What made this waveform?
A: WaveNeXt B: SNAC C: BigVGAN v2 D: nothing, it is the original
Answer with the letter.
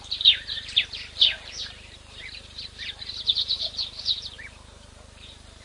C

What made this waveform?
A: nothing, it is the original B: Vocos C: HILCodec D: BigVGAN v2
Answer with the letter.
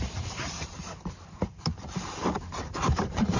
D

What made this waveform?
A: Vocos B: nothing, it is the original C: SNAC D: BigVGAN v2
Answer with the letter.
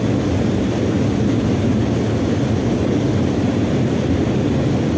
B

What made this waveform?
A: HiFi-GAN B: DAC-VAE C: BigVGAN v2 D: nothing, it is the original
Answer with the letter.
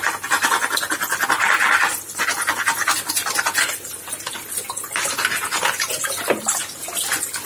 D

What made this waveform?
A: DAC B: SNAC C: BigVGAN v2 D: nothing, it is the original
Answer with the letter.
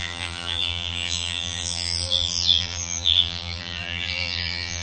C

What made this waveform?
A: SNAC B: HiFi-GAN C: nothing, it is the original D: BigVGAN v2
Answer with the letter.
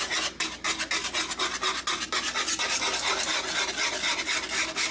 C